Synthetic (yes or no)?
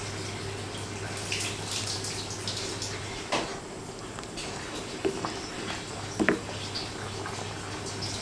no